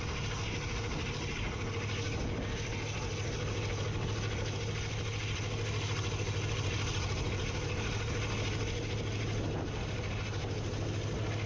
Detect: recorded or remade recorded